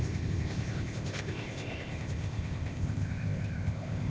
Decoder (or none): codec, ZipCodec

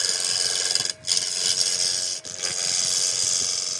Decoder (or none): none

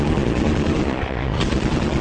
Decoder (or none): vocoder, Vocos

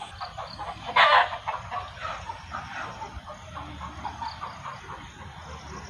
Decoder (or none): none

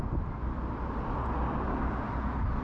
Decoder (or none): none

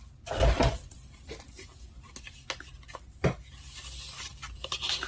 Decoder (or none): vocoder, BigVGAN v2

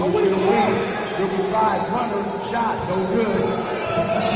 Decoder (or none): none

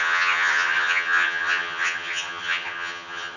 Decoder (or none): vocoder, HiFi-GAN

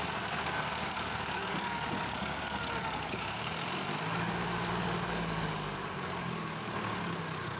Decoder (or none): codec, DAC